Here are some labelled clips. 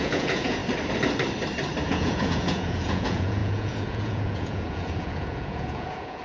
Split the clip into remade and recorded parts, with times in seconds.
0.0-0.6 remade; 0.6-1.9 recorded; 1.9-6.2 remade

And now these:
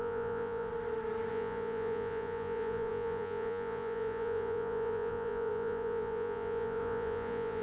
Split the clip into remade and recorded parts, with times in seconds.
0.0-0.7 remade; 0.7-1.3 recorded; 1.3-7.6 remade

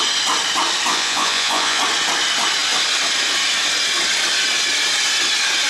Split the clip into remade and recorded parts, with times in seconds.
0.0-0.9 recorded; 0.9-1.8 remade; 1.8-5.7 recorded

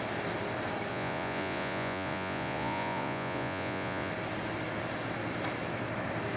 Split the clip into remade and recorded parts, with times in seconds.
0.0-0.9 recorded; 0.9-4.1 remade; 4.1-6.4 recorded

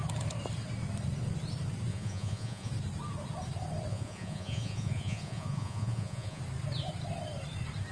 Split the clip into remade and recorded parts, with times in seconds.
0.0-1.9 recorded; 1.9-2.7 remade; 2.7-3.9 recorded; 3.9-6.4 remade; 6.4-7.9 recorded

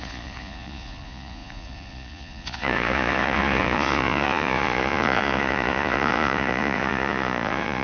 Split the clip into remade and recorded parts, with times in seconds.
0.0-7.8 remade